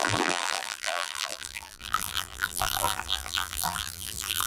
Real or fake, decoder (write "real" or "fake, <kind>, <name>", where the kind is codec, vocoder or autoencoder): fake, vocoder, BigVGAN v2